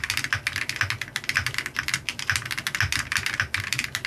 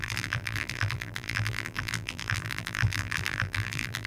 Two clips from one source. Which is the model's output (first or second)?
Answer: second